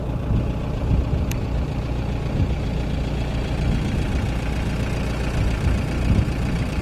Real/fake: real